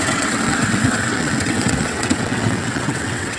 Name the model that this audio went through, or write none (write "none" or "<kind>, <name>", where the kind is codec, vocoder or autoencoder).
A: vocoder, WaveNeXt